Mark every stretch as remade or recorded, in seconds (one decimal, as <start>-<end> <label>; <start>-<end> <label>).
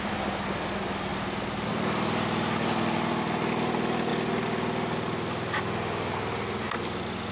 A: 0.0-7.3 recorded